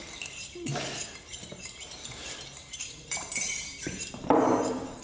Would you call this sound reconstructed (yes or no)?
yes